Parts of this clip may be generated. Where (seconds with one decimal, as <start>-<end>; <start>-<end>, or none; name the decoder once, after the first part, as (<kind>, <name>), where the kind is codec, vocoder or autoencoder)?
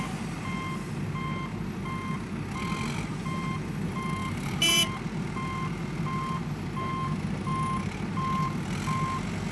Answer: 4.2-4.8 (vocoder, BigVGAN v2)